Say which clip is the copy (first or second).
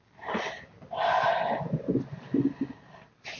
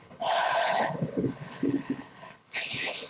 second